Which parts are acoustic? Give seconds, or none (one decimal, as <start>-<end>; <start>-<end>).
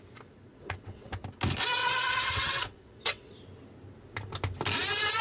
0.0-0.5; 1.1-1.8; 3.3-5.2